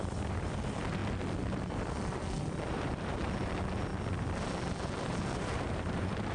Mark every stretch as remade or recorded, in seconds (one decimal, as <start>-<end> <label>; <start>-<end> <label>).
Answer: 0.0-1.0 remade; 1.0-2.7 recorded; 2.7-3.9 remade; 3.9-5.2 recorded; 5.2-6.3 remade